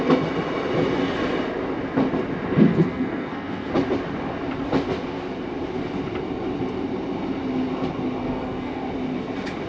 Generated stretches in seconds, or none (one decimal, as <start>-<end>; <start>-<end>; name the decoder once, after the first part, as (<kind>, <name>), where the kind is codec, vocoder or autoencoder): 2.7-3.7 (codec, SNAC); 8.2-8.8